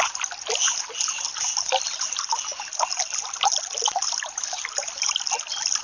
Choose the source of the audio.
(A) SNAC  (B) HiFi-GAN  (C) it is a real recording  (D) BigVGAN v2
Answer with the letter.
C